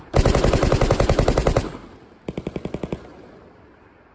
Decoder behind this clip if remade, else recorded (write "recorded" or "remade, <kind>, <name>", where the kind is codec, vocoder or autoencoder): recorded